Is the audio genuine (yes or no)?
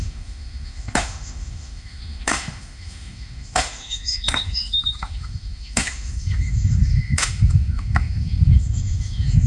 no